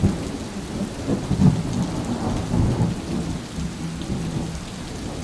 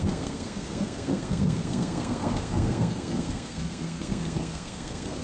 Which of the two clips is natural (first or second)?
first